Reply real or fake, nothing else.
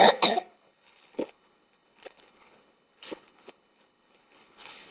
fake